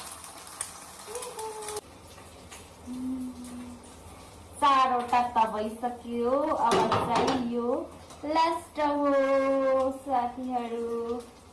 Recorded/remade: recorded